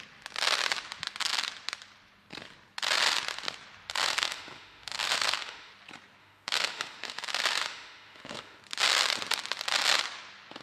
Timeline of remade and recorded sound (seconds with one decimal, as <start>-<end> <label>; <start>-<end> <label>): 0.0-4.0 recorded; 4.0-5.7 remade; 5.7-6.2 recorded; 6.2-8.6 remade; 8.6-10.6 recorded